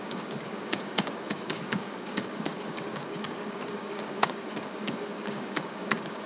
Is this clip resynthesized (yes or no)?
yes